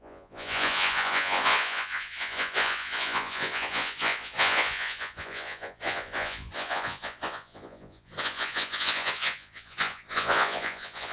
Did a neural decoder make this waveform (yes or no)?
yes